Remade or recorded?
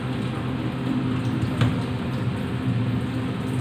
recorded